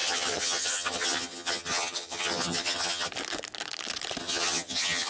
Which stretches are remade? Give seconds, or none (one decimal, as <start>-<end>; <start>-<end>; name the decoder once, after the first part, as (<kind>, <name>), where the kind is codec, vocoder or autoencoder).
0.0-3.1 (vocoder, HiFi-GAN); 4.2-5.1